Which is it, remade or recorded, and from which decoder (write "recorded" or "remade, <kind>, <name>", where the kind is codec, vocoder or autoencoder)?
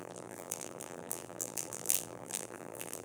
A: remade, vocoder, BigVGAN v2